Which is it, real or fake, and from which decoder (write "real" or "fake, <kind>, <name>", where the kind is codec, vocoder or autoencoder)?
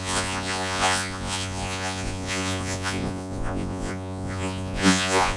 fake, vocoder, Vocos